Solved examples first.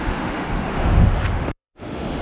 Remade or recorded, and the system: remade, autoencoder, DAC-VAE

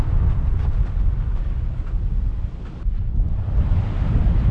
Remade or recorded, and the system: recorded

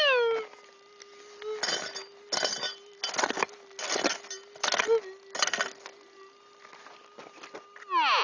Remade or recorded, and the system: recorded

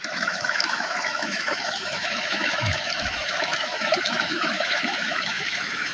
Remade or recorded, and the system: remade, autoencoder, DAC-VAE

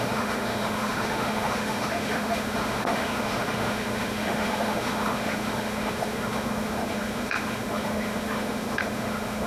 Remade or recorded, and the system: remade, autoencoder, DAC-VAE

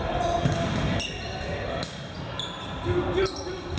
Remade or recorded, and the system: recorded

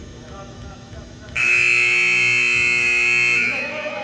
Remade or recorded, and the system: remade, autoencoder, DAC-VAE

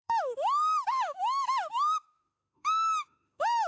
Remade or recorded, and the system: remade, autoencoder, DAC-VAE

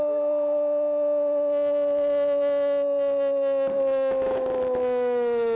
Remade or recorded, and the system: recorded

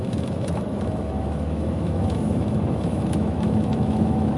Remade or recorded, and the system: remade, autoencoder, DAC-VAE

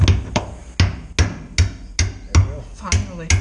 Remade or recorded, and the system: recorded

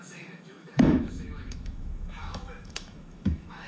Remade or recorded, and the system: remade, autoencoder, DAC-VAE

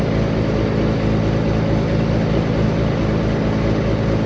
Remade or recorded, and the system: recorded